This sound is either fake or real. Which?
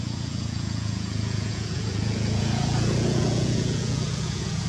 fake